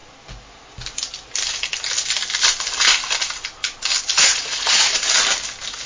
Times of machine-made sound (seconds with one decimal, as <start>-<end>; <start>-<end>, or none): 4.3-4.9